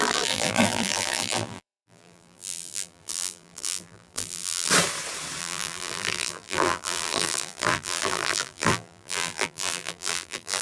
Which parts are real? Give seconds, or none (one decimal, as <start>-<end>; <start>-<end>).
4.7-5.4